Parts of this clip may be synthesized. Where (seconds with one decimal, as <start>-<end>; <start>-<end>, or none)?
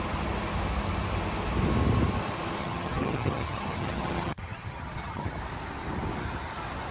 2.6-5.4